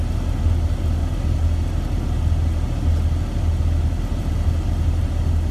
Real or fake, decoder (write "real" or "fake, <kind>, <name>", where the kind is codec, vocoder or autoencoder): real